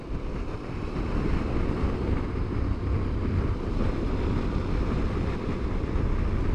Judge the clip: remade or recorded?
recorded